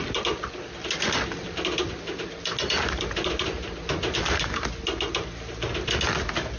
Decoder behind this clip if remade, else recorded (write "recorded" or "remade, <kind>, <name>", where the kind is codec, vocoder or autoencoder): recorded